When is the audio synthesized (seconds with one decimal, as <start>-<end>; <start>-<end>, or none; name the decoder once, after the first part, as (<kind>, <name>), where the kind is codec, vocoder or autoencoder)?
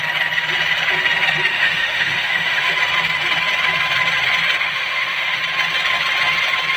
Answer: 1.5-2.7 (autoencoder, DAC-VAE); 4.6-5.4